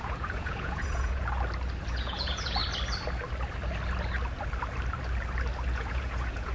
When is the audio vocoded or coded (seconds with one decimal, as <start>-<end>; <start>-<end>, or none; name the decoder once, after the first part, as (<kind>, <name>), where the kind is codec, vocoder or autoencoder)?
0.0-1.2 (vocoder, Vocos); 1.9-2.6; 5.7-6.5